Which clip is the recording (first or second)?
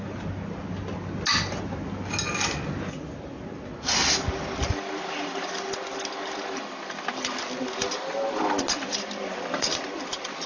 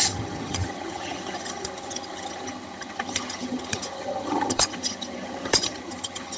first